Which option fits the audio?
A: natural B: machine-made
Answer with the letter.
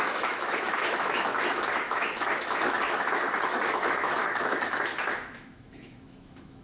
B